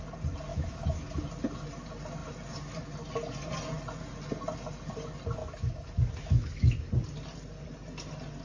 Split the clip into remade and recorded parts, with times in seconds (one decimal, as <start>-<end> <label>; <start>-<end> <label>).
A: 0.0-0.5 recorded; 0.5-1.2 remade; 1.2-5.4 recorded; 5.4-6.9 remade; 6.9-8.4 recorded